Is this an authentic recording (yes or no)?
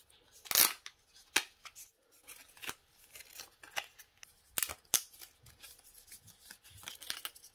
yes